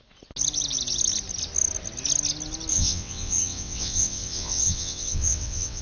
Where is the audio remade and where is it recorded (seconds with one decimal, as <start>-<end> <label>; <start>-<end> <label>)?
0.0-2.7 recorded; 2.7-5.8 remade